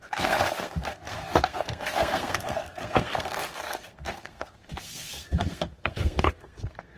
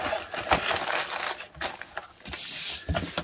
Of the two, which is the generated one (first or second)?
first